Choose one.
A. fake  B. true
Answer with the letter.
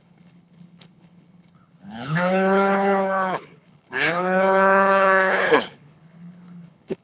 A